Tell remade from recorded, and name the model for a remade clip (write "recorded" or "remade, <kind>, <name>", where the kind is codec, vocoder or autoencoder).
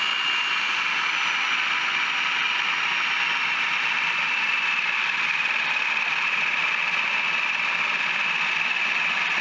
recorded